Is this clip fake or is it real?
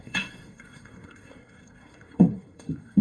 fake